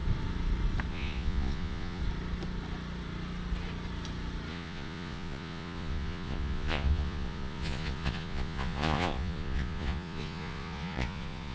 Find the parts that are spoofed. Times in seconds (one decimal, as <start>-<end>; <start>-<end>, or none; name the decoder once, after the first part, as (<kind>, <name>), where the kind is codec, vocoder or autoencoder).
0.9-2.0 (vocoder, Vocos); 4.5-11.5